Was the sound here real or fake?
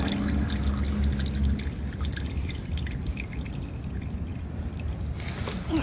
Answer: real